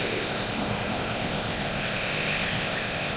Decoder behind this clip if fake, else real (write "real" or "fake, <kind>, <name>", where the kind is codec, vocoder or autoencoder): fake, codec, ZipCodec